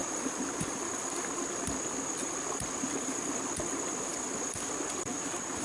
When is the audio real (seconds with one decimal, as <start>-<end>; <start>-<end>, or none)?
0.0-5.6